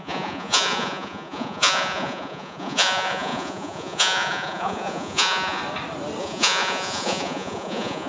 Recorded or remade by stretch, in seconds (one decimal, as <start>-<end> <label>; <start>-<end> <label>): 0.0-5.6 remade; 5.6-6.2 recorded; 6.2-8.1 remade